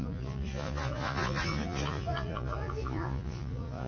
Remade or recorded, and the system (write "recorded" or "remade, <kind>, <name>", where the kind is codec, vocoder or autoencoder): remade, vocoder, Vocos